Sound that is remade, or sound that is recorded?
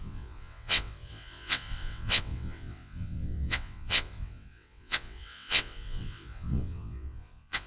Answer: remade